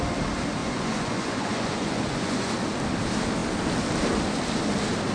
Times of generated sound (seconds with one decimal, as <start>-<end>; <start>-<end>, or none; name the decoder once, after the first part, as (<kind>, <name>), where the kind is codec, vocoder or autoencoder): 0.6-2.5 (vocoder, Vocos)